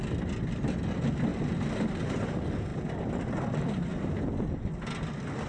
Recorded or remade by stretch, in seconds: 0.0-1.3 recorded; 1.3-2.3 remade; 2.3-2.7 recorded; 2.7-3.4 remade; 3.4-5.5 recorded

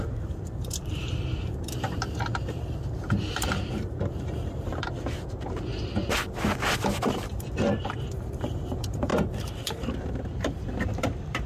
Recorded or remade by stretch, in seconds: 0.0-9.1 remade; 9.1-9.6 recorded; 9.6-11.5 remade

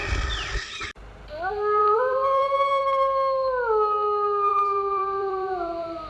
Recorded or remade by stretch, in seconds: 0.0-0.7 remade; 0.7-1.8 recorded; 1.8-2.8 remade; 2.8-4.5 recorded; 4.5-6.1 remade

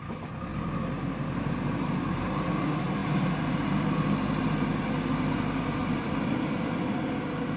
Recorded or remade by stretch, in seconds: 0.0-0.5 recorded; 0.5-2.2 remade; 2.2-3.0 recorded; 3.0-4.8 remade; 4.8-5.8 recorded; 5.8-7.0 remade; 7.0-7.6 recorded

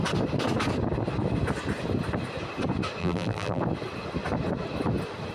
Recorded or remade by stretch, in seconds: 0.0-3.0 recorded; 3.0-3.6 remade; 3.6-5.3 recorded

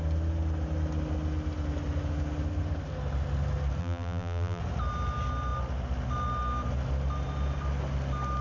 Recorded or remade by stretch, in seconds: 0.0-3.8 recorded; 3.8-4.6 remade; 4.6-8.4 recorded

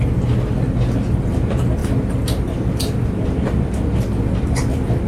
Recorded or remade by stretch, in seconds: 0.0-5.1 recorded